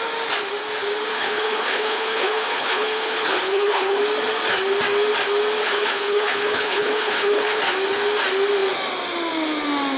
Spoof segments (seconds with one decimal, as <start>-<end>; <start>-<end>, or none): 1.1-4.0; 5.6-7.6